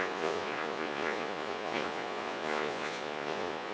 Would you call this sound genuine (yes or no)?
no